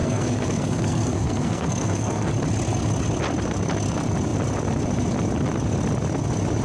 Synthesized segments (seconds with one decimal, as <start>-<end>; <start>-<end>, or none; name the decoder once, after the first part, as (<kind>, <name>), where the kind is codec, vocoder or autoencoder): 0.0-2.3 (codec, SNAC)